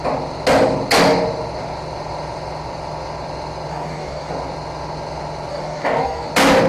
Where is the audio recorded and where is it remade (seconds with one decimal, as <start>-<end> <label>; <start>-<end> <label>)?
0.0-3.7 recorded; 3.7-4.3 remade; 4.3-5.5 recorded; 5.5-6.3 remade; 6.3-6.7 recorded